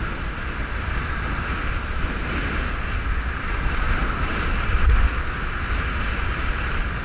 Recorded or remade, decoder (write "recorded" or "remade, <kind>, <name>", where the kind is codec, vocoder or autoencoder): recorded